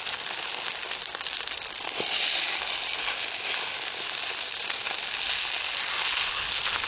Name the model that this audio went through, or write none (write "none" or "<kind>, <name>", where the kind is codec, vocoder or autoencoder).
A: none